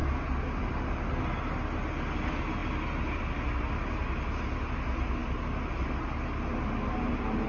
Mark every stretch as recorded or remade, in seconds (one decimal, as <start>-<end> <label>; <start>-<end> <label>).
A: 0.0-7.5 recorded